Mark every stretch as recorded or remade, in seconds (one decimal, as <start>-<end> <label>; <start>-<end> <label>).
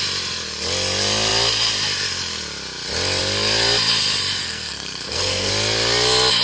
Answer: 0.0-4.4 recorded; 4.4-5.5 remade; 5.5-6.4 recorded